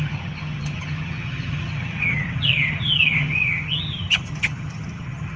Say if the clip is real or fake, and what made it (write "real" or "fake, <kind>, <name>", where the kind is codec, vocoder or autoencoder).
fake, vocoder, HiFi-GAN